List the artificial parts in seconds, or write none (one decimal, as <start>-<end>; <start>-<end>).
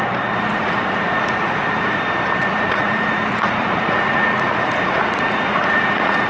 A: 0.5-2.0; 2.4-6.3